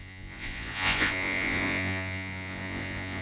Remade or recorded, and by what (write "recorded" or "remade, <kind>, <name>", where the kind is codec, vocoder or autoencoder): remade, vocoder, Vocos